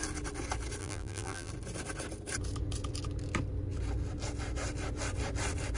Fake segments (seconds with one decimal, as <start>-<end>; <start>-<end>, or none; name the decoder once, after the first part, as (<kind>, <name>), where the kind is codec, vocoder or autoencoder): 0.8-1.5 (vocoder, BigVGAN v2)